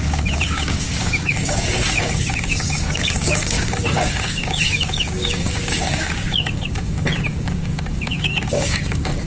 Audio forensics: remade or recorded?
remade